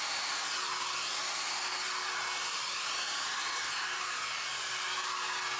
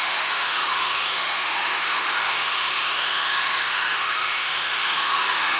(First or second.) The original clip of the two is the first